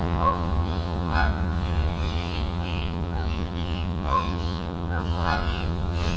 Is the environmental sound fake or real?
fake